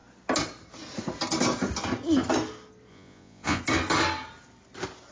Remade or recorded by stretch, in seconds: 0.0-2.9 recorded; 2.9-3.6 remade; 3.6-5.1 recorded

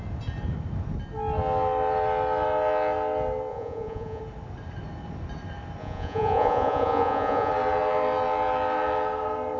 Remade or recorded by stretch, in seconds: 0.0-3.5 recorded; 3.5-4.2 remade; 4.2-5.8 recorded; 5.8-7.5 remade; 7.5-9.6 recorded

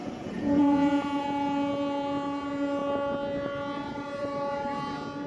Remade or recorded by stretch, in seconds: 0.0-1.2 remade; 1.2-5.3 recorded

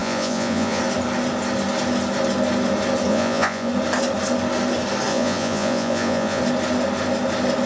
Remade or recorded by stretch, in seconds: 0.0-0.8 remade; 0.8-3.1 recorded; 3.1-3.7 remade; 3.7-5.1 recorded; 5.1-6.4 remade; 6.4-7.7 recorded

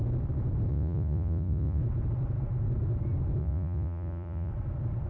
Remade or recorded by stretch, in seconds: 0.0-0.7 recorded; 0.7-1.8 remade; 1.8-3.4 recorded; 3.4-4.5 remade; 4.5-5.1 recorded